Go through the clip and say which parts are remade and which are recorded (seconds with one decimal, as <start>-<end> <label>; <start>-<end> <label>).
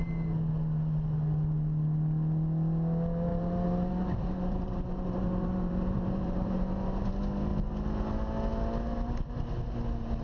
0.0-3.3 recorded; 3.3-7.1 remade; 7.1-10.2 recorded